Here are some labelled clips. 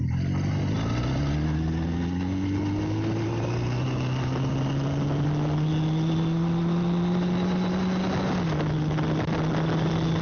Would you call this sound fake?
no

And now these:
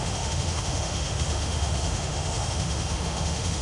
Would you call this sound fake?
yes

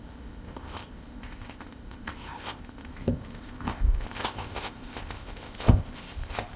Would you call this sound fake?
yes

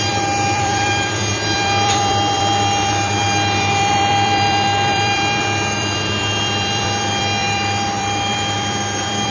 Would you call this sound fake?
yes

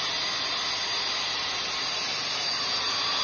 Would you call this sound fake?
no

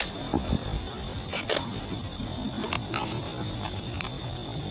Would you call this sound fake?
no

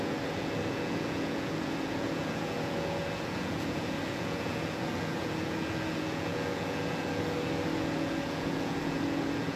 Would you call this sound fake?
yes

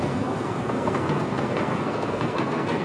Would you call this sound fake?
yes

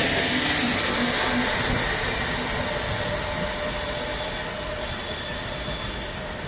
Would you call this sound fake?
no